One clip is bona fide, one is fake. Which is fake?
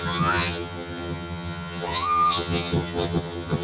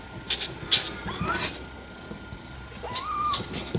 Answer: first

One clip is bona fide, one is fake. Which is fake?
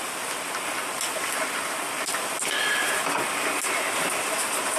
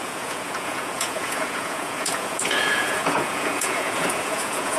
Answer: second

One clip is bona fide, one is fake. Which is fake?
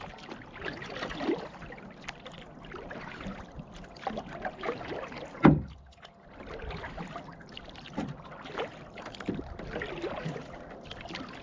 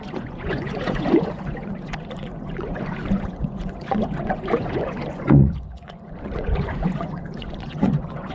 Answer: second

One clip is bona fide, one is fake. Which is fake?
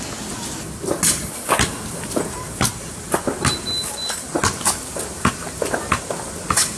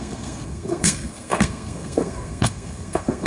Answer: second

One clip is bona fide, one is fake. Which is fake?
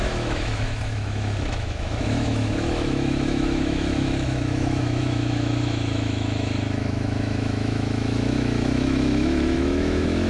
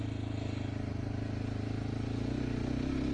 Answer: first